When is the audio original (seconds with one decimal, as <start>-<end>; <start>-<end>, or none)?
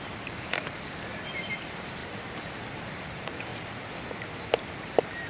3.5-4.7